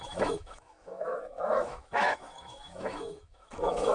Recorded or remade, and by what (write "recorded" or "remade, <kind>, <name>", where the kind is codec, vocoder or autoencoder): remade, autoencoder, DAC-VAE